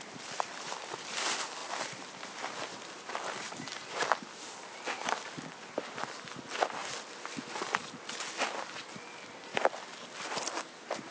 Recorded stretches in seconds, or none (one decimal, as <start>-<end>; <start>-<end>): 0.0-11.1